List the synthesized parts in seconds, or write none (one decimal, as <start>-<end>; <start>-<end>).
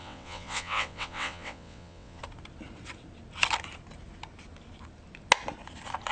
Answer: 0.0-2.2